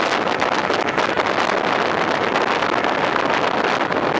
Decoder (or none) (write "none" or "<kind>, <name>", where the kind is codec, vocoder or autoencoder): none